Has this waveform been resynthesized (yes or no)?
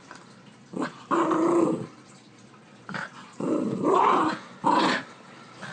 no